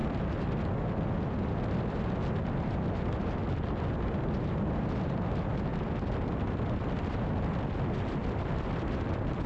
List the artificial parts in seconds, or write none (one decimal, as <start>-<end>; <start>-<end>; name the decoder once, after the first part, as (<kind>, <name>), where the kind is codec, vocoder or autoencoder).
3.4-4.2 (vocoder, BigVGAN v2); 5.7-7.1; 8.2-9.5